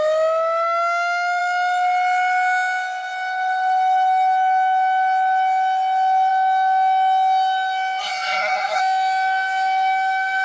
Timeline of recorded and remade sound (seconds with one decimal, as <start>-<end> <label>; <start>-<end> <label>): 0.0-8.0 recorded; 8.0-8.8 remade; 8.8-10.4 recorded